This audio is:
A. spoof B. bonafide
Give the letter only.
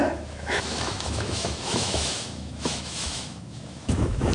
A